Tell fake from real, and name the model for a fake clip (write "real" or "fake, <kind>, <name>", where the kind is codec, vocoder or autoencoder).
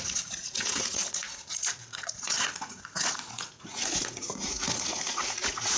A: fake, vocoder, Vocos